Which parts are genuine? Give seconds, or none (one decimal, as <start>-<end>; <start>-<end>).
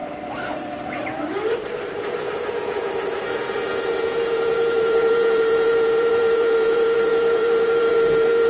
0.0-1.9